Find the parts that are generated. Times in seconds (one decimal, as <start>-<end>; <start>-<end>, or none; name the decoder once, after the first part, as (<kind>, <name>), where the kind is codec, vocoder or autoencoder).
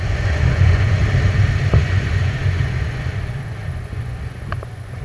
0.0-1.0 (vocoder, Vocos); 1.7-5.0